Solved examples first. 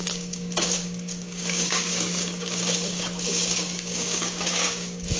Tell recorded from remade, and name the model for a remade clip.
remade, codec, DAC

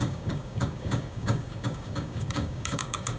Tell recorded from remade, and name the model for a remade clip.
remade, codec, DAC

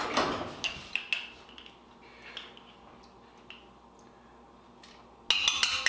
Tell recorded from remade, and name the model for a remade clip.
recorded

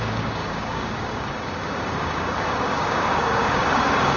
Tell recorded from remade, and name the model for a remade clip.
remade, codec, DAC